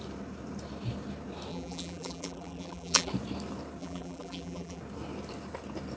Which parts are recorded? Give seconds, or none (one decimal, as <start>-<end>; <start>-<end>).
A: 0.0-1.5; 3.1-3.8; 4.8-6.0